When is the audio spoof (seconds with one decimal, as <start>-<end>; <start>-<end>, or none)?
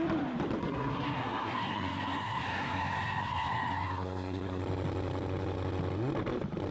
0.6-4.6